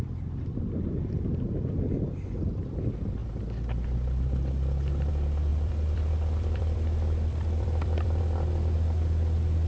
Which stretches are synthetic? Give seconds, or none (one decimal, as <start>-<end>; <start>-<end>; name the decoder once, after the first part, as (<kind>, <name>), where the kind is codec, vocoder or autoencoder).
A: 5.5-8.2 (vocoder, BigVGAN v2)